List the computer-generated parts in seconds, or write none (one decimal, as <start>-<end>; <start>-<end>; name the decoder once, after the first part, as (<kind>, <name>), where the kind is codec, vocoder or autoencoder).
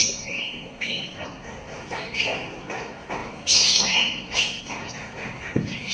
0.0-5.9 (codec, SNAC)